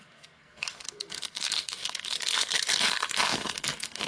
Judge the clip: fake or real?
fake